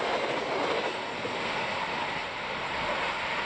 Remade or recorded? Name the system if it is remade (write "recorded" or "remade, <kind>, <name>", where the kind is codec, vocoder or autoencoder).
recorded